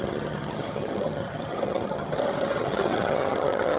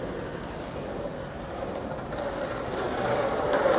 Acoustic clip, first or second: second